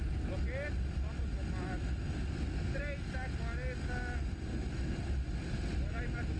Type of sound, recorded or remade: recorded